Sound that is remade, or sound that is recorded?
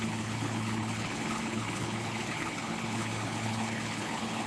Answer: remade